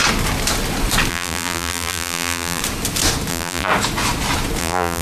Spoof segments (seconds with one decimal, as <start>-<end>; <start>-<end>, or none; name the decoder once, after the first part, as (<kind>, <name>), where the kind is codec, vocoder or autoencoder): 1.1-2.6 (vocoder, BigVGAN v2); 3.3-3.7; 4.6-5.0